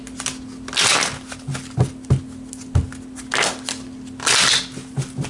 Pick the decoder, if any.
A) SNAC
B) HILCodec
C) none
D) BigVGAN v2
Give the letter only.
C